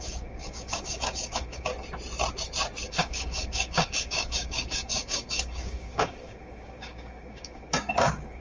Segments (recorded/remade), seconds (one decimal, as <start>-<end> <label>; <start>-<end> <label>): 0.0-1.7 remade; 1.7-2.9 recorded; 2.9-8.4 remade